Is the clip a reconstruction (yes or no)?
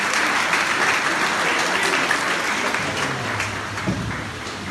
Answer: no